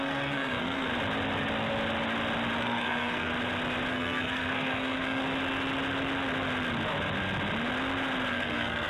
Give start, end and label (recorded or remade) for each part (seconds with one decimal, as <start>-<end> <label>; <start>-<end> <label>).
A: 0.0-0.9 remade; 0.9-2.6 recorded; 2.6-3.3 remade; 3.3-3.9 recorded; 3.9-5.2 remade; 5.2-8.3 recorded; 8.3-8.9 remade